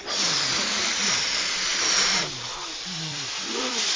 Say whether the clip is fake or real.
fake